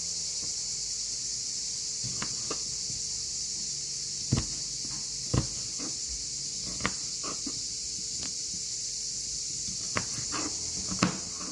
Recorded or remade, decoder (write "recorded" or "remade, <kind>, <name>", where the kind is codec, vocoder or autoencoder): recorded